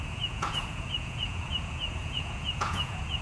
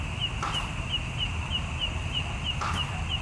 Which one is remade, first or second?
first